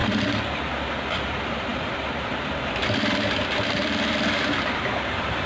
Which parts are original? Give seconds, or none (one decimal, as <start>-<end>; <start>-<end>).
0.0-1.1